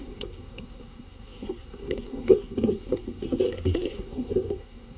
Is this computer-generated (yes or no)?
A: yes